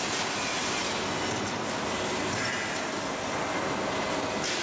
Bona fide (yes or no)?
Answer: yes